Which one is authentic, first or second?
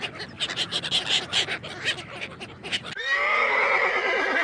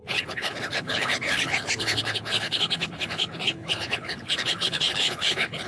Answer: first